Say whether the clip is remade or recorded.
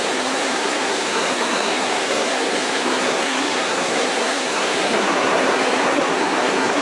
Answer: remade